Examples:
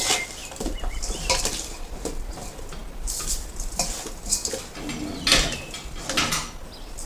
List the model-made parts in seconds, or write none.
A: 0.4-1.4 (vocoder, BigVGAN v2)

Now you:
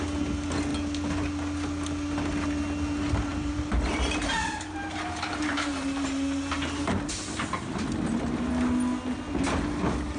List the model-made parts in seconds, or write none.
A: 3.3-8.0 (vocoder, BigVGAN v2)

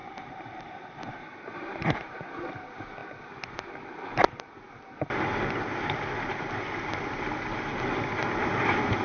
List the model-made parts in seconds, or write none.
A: 0.0-2.3 (vocoder, BigVGAN v2)

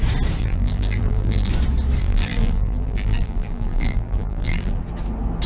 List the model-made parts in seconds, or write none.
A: 0.4-1.5 (vocoder, BigVGAN v2); 2.0-4.8

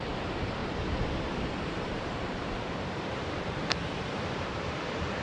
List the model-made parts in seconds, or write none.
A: 0.0-0.6 (vocoder, BigVGAN v2); 1.2-5.2

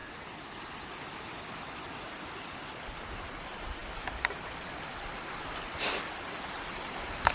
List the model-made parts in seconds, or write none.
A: none

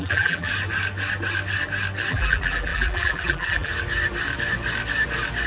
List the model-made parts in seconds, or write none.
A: 0.0-0.5 (vocoder, BigVGAN v2); 2.1-3.7

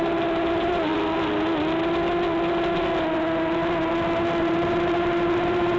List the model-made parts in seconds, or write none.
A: 0.0-0.9 (vocoder, BigVGAN v2); 4.4-5.8